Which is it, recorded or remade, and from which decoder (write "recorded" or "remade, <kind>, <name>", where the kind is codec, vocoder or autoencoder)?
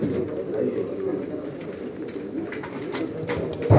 recorded